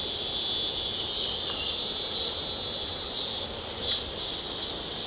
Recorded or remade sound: recorded